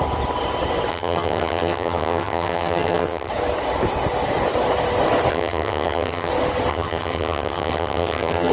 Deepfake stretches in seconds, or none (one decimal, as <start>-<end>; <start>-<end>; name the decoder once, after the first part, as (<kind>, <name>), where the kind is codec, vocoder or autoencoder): 0.9-3.3 (vocoder, HiFi-GAN); 5.3-6.3; 6.7-8.5